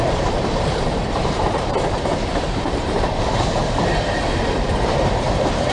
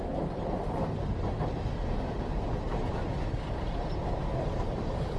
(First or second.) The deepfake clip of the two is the first